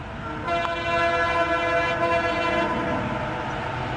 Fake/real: real